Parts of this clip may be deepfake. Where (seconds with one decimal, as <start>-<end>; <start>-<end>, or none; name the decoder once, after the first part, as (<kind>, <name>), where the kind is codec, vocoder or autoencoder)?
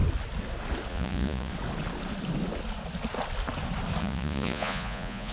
0.9-1.5 (vocoder, Vocos); 4.0-5.3